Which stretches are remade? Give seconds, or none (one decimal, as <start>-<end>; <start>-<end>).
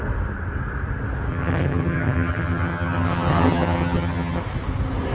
1.3-4.4